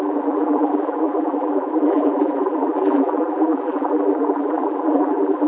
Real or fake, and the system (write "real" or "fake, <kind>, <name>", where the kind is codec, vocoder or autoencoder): fake, vocoder, BigVGAN v2